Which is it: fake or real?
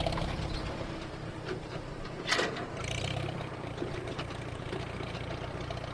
fake